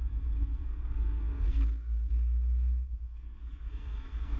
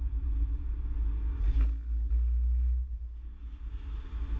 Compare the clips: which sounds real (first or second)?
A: second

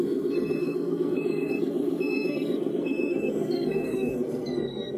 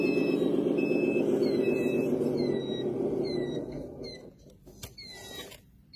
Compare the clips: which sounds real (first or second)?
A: second